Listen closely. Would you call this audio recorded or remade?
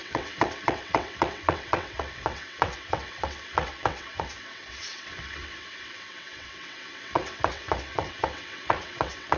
remade